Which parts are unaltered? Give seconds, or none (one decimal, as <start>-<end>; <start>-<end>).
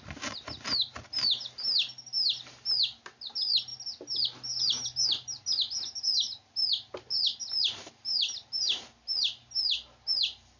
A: 0.0-10.6